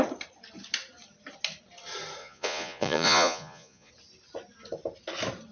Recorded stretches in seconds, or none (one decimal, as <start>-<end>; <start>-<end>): 0.0-2.2; 3.9-5.5